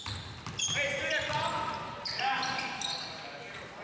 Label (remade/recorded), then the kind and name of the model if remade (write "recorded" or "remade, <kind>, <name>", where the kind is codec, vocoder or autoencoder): recorded